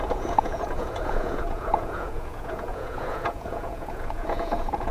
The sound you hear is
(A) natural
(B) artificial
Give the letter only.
B